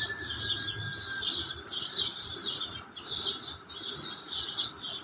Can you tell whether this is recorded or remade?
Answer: recorded